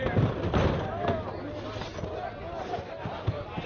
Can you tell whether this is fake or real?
real